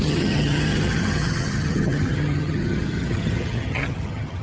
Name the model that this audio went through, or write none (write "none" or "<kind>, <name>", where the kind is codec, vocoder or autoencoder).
vocoder, HiFi-GAN